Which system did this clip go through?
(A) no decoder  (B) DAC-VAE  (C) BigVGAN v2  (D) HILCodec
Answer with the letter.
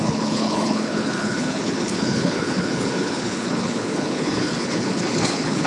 D